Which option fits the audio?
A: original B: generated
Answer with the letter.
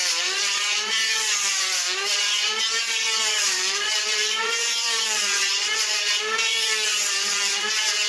B